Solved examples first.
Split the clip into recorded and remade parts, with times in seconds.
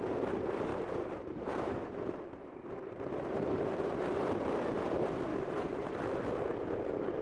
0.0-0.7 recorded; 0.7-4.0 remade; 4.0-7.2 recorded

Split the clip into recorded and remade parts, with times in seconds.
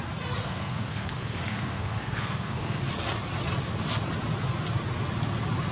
0.0-0.4 recorded; 0.4-2.8 remade; 2.8-5.7 recorded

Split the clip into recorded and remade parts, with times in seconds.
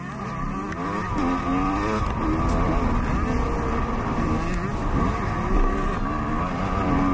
0.0-7.1 recorded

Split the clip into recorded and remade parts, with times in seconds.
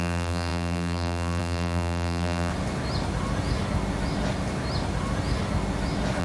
0.0-2.5 remade; 2.5-6.2 recorded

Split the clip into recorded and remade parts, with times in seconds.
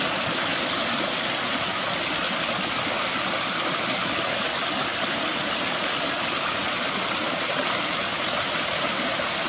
0.0-9.5 recorded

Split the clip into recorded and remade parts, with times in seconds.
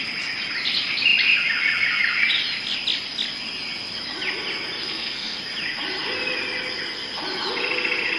0.0-4.8 recorded; 4.8-5.4 remade; 5.4-8.2 recorded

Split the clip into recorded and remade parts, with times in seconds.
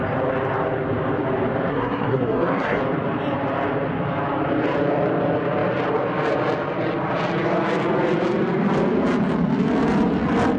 0.0-1.7 recorded; 1.7-2.8 remade; 2.8-10.6 recorded